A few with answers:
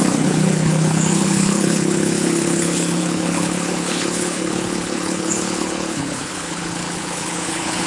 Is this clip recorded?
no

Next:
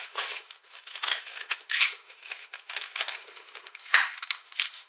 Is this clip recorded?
no